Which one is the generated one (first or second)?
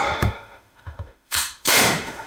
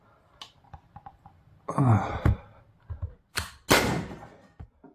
first